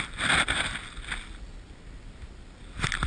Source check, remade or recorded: recorded